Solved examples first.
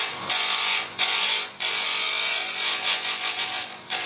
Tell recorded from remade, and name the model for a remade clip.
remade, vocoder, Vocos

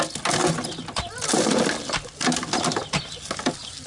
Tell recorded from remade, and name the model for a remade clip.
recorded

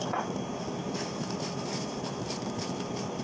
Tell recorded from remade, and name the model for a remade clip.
recorded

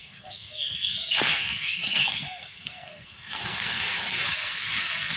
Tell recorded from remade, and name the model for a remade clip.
remade, codec, SNAC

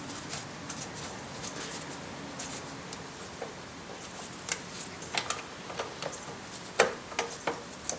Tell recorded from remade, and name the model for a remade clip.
recorded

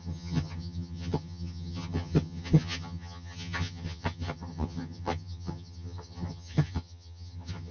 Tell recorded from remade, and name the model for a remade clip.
remade, vocoder, HiFi-GAN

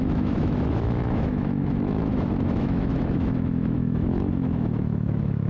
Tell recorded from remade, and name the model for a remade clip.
remade, autoencoder, DAC-VAE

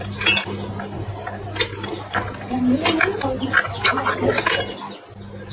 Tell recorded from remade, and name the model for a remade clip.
recorded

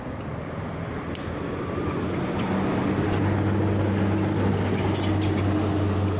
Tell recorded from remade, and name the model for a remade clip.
recorded